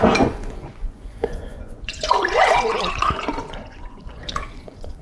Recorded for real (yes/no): no